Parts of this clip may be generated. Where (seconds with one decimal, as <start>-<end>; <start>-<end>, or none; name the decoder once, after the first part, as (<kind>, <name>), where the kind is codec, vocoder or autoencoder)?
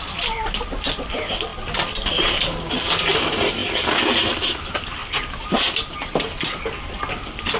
none